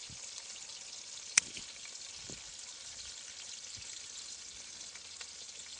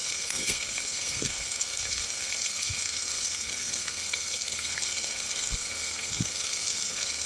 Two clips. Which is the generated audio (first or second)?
second